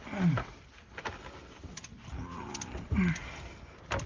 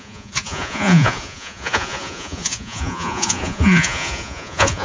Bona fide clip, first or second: first